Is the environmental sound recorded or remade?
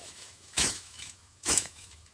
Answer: remade